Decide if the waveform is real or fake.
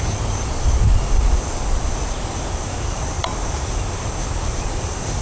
real